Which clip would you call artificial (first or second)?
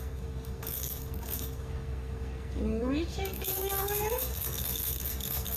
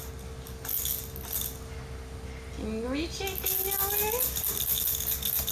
first